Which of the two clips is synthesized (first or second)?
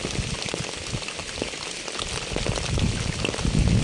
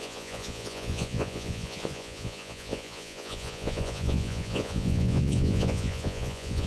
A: second